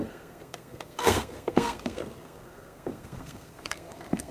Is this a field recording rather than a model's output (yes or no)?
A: no